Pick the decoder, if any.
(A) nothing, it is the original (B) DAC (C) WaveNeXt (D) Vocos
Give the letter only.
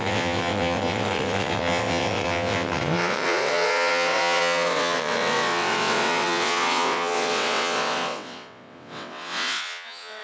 C